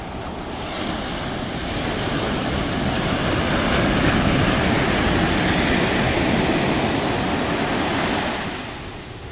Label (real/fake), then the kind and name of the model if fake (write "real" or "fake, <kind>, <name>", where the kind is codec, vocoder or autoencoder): real